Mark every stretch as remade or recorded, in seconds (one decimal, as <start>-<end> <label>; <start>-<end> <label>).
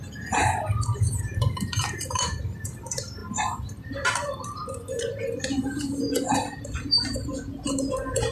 0.0-8.3 remade